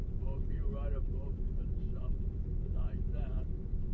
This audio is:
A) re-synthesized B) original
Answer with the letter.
A